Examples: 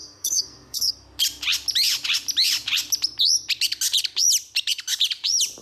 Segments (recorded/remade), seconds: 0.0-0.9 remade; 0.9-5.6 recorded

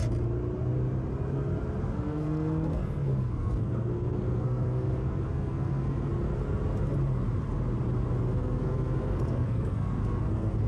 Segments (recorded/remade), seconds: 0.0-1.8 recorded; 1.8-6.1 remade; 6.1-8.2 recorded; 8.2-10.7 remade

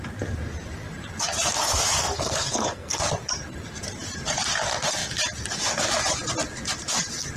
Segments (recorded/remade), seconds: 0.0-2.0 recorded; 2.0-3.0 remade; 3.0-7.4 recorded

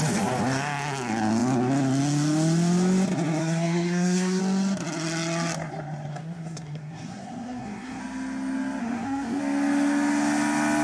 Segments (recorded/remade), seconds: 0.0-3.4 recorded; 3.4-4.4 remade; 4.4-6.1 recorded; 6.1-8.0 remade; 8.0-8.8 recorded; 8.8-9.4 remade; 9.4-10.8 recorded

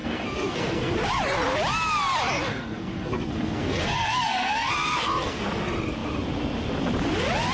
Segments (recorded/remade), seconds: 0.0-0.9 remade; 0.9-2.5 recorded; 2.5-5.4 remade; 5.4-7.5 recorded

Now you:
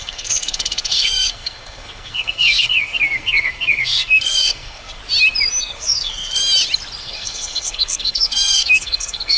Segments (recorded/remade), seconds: 0.0-5.0 remade; 5.0-5.6 recorded; 5.6-6.4 remade; 6.4-7.0 recorded; 7.0-9.4 remade